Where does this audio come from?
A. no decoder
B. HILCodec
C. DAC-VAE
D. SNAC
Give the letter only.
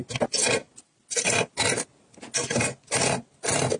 A